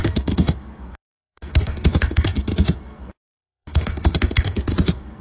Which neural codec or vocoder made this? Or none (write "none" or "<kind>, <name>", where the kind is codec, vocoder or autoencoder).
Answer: codec, SNAC